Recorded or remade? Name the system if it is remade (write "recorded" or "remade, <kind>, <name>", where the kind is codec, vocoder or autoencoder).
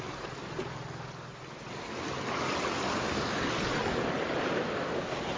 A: recorded